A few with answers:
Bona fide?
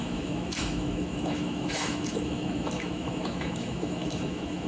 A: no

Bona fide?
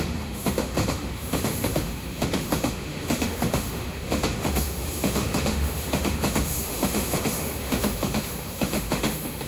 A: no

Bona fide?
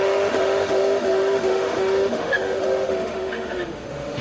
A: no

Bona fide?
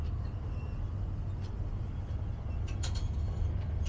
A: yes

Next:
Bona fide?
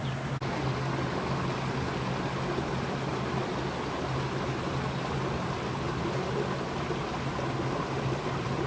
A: yes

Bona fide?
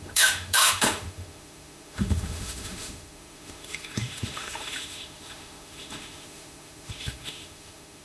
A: no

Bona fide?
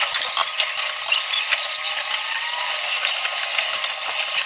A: yes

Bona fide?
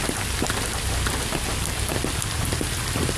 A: yes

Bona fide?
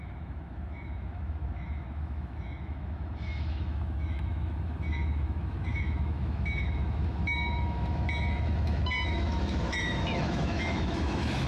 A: no